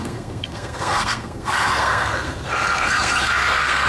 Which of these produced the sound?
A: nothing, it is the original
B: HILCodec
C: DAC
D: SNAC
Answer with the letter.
D